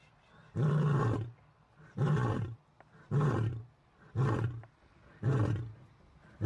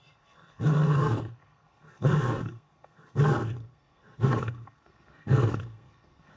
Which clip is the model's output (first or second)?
second